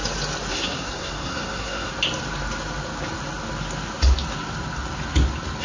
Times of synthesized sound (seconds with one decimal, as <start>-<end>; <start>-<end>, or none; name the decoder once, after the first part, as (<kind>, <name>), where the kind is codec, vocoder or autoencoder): 0.5-1.9 (codec, SNAC)